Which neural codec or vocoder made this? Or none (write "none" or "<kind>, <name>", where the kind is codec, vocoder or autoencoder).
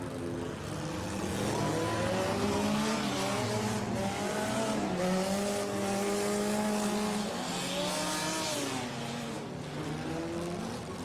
none